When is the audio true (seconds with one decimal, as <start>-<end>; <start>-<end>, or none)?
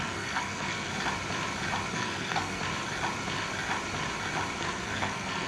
0.9-1.9; 2.6-4.6